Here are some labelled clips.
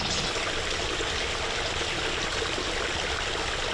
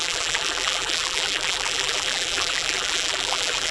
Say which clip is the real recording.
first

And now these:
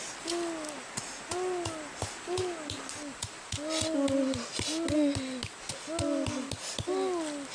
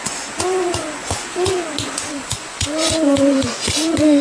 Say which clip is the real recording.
first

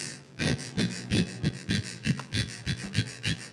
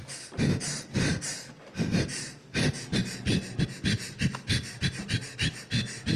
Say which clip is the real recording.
second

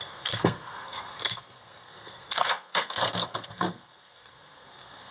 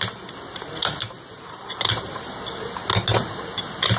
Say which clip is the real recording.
second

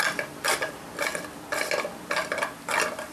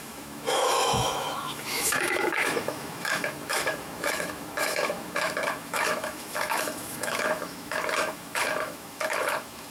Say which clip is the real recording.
first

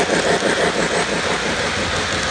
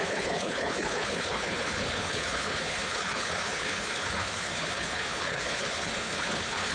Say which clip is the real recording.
first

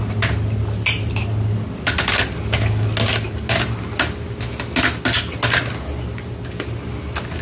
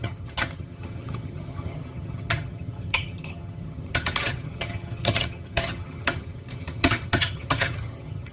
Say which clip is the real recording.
first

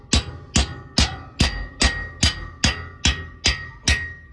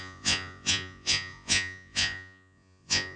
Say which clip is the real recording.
first